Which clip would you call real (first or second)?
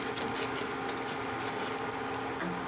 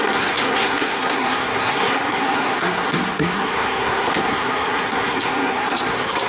first